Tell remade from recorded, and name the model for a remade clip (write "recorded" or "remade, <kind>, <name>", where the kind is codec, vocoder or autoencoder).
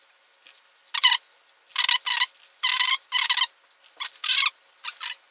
recorded